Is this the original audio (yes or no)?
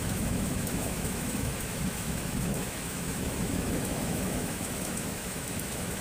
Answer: no